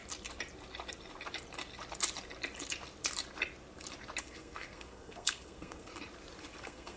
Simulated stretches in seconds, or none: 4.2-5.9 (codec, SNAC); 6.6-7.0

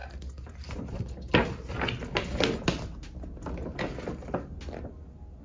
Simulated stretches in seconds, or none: none

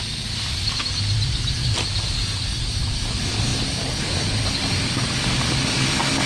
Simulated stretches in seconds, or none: none

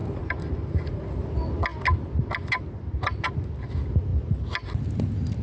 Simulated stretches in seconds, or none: 0.0-1.0 (vocoder, BigVGAN v2)

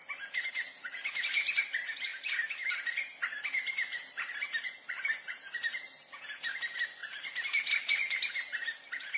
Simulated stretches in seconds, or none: 3.9-5.4 (vocoder, BigVGAN v2); 7.0-8.3

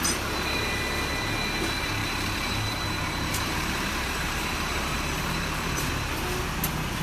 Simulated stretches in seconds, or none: 2.0-5.9 (vocoder, BigVGAN v2)